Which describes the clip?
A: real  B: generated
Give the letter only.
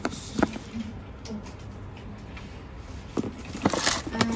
A